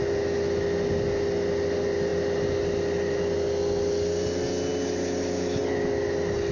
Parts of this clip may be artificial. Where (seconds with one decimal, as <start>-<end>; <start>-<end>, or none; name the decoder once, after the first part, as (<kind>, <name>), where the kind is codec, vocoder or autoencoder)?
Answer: none